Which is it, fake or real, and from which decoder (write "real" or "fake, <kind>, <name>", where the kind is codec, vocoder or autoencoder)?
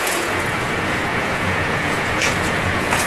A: fake, vocoder, Vocos